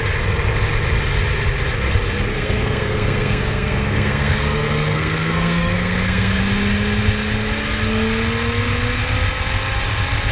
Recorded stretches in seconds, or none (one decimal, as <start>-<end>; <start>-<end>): 0.0-2.3; 6.4-10.3